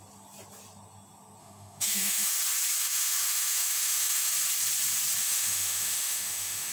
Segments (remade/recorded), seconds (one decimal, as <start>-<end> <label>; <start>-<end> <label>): 0.0-1.4 recorded; 1.4-2.4 remade; 2.4-2.8 recorded; 2.8-4.3 remade; 4.3-5.2 recorded; 5.2-6.7 remade